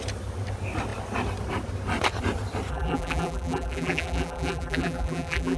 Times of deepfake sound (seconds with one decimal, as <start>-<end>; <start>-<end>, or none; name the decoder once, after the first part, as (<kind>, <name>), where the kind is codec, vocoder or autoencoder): 2.7-5.6 (vocoder, BigVGAN v2)